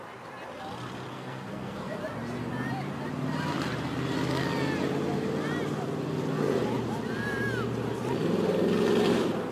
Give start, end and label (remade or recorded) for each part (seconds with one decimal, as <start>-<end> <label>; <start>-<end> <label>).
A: 0.0-1.1 recorded; 1.1-2.0 remade; 2.0-9.5 recorded